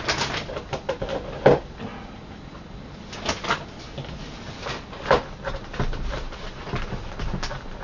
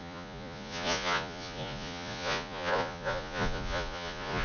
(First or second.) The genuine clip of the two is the first